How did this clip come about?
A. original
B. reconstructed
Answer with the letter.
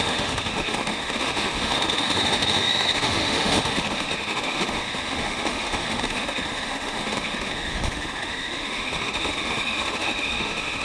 B